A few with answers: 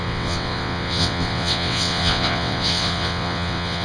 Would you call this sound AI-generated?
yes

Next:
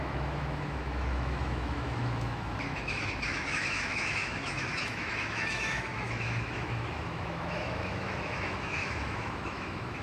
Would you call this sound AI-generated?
yes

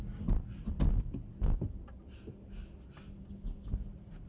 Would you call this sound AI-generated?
no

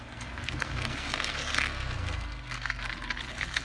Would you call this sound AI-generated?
yes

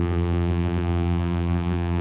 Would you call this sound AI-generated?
yes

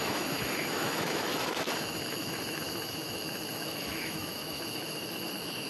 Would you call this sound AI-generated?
yes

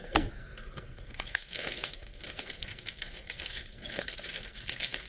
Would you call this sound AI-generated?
yes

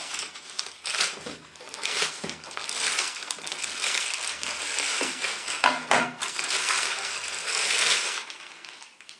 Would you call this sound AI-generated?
yes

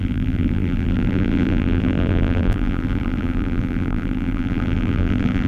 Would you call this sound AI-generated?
yes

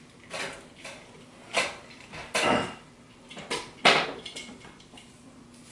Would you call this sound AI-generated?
no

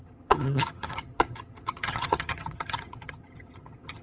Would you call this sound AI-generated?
yes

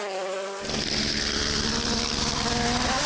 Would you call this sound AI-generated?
no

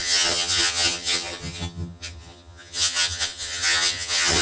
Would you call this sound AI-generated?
yes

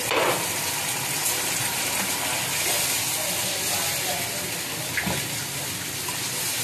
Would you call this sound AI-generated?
no